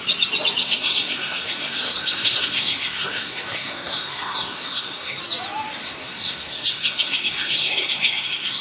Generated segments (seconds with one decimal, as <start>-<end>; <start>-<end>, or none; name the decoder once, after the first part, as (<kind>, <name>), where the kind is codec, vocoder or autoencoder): 0.6-5.2 (codec, SNAC); 5.8-8.6